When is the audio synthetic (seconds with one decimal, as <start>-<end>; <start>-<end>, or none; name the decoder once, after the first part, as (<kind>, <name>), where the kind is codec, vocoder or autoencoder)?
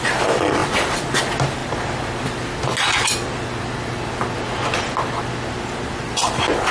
none